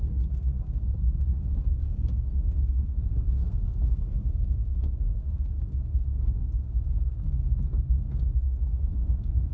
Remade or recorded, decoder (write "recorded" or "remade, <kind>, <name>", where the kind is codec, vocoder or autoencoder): remade, codec, SNAC